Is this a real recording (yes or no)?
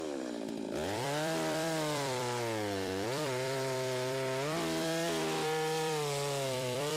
no